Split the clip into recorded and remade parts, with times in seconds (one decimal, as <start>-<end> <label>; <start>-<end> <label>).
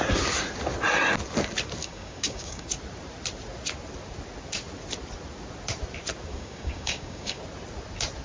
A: 0.0-1.8 recorded; 1.8-2.7 remade; 2.7-6.3 recorded; 6.3-7.4 remade; 7.4-8.2 recorded